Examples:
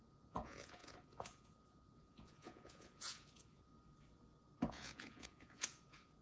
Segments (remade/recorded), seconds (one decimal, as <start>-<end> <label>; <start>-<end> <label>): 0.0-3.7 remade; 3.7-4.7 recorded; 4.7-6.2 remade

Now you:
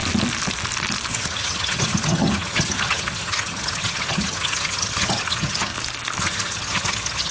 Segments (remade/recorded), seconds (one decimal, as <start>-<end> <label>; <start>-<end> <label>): 0.0-1.1 recorded; 1.1-5.7 remade; 5.7-6.2 recorded; 6.2-7.3 remade

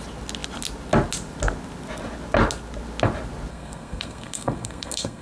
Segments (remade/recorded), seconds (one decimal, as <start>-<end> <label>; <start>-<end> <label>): 0.0-3.5 recorded; 3.5-5.2 remade